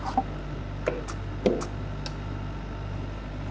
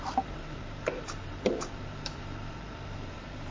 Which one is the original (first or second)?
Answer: first